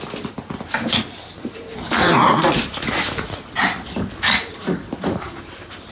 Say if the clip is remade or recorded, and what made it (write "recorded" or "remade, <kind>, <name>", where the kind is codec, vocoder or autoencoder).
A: recorded